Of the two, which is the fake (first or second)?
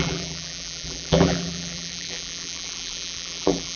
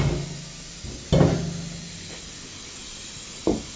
first